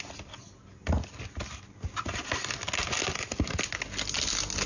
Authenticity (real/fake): real